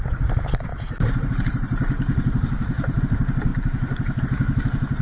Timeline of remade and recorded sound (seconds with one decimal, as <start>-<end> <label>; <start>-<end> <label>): 0.0-0.7 recorded; 0.7-3.0 remade; 3.0-3.5 recorded; 3.5-4.2 remade; 4.2-5.0 recorded